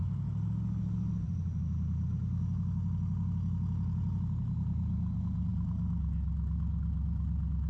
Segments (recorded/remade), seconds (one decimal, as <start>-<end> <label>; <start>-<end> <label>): 0.0-7.7 recorded